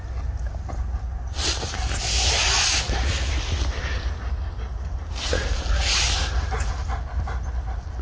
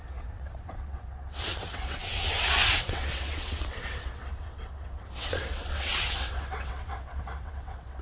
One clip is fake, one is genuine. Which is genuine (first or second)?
first